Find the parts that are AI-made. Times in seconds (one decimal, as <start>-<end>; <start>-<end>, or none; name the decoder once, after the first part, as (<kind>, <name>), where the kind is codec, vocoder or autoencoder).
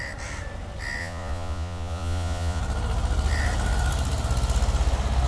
1.0-2.6 (vocoder, Vocos)